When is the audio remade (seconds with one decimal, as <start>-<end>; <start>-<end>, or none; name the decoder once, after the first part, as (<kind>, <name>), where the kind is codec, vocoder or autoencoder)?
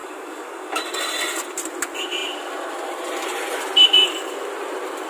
0.0-0.8 (codec, DAC)